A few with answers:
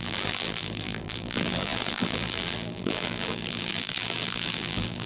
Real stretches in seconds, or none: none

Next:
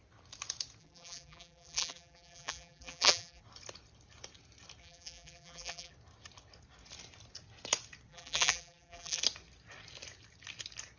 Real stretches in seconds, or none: 0.0-0.8; 3.4-4.8; 5.9-8.1; 9.2-11.0

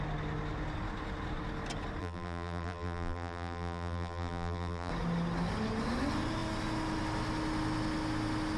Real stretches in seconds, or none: 0.0-2.0; 4.9-8.6

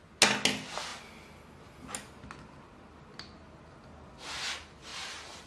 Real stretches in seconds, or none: 0.0-4.9

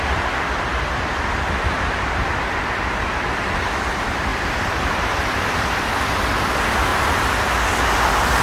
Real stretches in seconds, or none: 0.7-2.8; 6.9-7.9